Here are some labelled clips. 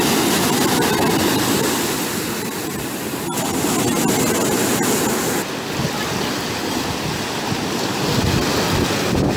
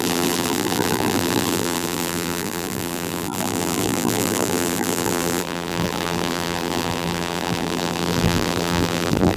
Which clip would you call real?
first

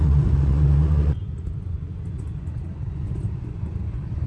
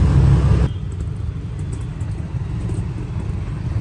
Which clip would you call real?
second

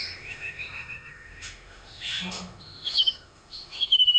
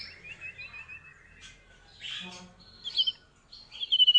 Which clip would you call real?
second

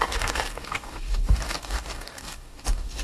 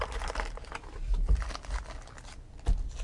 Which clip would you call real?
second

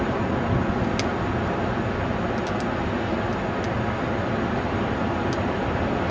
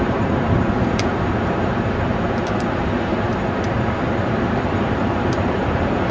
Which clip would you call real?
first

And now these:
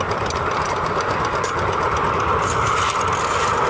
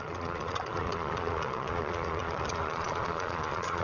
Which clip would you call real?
first